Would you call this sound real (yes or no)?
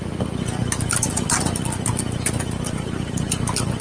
yes